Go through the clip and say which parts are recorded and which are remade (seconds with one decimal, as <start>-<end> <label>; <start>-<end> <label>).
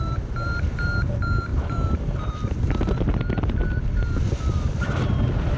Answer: 0.0-5.6 remade